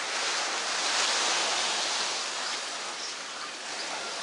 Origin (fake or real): real